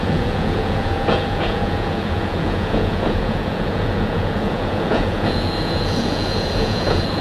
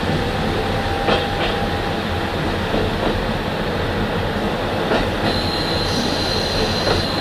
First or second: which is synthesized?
first